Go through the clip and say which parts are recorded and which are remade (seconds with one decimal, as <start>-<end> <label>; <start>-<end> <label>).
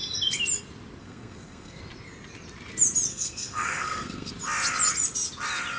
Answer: 0.0-1.0 recorded; 1.0-1.8 remade; 1.8-3.1 recorded; 3.1-4.3 remade; 4.3-5.8 recorded